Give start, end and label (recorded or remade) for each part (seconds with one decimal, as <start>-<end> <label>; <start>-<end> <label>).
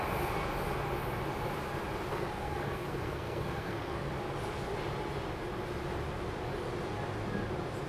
0.0-2.1 recorded; 2.1-4.1 remade; 4.1-7.9 recorded